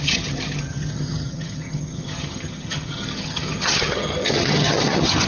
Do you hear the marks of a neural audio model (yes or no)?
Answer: yes